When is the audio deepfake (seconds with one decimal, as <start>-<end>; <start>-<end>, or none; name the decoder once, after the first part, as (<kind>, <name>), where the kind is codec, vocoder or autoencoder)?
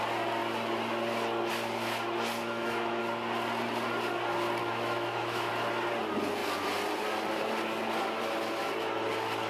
2.4-3.0 (autoencoder, DAC-VAE); 4.6-5.5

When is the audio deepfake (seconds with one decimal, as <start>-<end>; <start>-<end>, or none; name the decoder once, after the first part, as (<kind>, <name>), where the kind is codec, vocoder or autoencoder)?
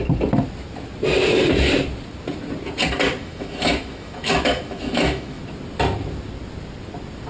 3.2-5.4 (autoencoder, DAC-VAE)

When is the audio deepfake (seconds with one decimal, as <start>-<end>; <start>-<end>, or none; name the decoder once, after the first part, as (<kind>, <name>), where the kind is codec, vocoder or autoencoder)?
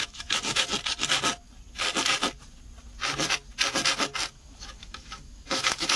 0.0-0.7 (autoencoder, DAC-VAE); 4.3-6.0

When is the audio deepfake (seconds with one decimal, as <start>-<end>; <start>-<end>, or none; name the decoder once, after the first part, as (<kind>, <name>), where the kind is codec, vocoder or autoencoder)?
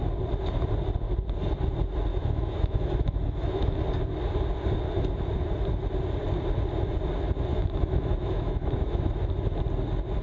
2.1-3.8 (autoencoder, DAC-VAE); 7.5-9.1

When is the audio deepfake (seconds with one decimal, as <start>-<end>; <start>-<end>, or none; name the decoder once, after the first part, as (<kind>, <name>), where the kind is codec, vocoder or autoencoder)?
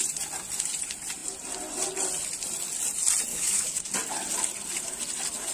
3.3-3.8 (autoencoder, DAC-VAE)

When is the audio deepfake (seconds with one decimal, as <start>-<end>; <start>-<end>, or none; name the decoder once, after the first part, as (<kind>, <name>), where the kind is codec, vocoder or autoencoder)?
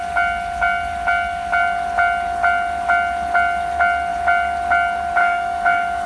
5.2-6.1 (autoencoder, DAC-VAE)